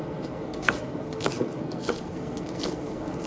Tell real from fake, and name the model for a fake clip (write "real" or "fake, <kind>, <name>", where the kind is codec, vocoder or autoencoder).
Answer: fake, codec, SNAC